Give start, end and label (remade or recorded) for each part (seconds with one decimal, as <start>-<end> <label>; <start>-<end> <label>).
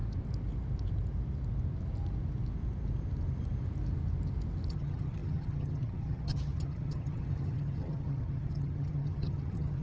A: 0.0-4.7 recorded; 4.7-9.8 remade